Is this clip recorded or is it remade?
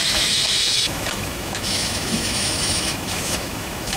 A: remade